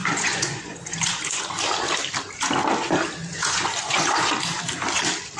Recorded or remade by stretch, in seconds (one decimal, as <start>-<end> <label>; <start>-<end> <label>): 0.0-1.4 remade; 1.4-3.3 recorded; 3.3-4.3 remade; 4.3-5.4 recorded